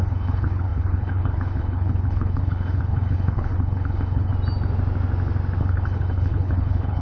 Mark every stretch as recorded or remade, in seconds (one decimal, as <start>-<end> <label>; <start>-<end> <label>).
0.0-4.3 remade; 4.3-5.6 recorded; 5.6-7.0 remade